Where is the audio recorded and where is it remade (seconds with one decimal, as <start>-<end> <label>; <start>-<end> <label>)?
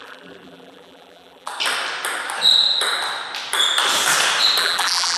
0.0-1.5 remade; 1.5-4.6 recorded; 4.6-5.2 remade